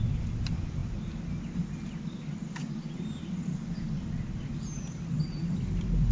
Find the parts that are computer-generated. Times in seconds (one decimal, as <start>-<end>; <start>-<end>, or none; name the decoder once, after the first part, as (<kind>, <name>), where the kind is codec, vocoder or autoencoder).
none